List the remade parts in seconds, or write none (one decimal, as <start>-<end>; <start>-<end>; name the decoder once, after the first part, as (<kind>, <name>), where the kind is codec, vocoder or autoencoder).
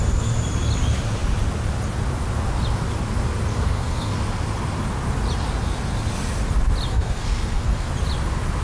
3.5-4.1 (codec, SNAC); 6.9-7.9